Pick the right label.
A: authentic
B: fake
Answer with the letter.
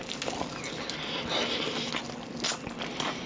A